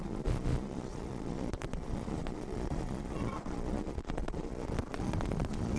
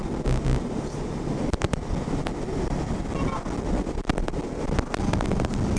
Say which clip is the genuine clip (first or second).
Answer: second